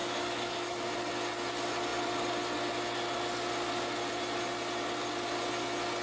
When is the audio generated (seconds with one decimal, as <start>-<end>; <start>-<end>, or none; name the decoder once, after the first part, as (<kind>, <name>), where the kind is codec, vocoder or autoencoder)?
0.0-0.9 (codec, DAC)